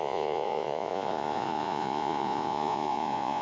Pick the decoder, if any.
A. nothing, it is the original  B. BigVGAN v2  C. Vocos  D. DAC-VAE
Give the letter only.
C